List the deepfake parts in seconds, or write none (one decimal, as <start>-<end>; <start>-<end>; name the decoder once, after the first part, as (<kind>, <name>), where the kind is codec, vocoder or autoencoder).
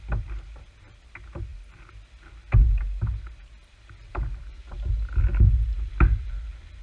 none